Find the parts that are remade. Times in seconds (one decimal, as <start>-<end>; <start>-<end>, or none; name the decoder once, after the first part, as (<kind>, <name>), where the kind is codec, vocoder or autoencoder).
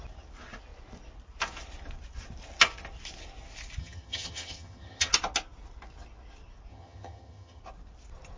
3.8-5.1 (vocoder, HiFi-GAN); 6.7-7.6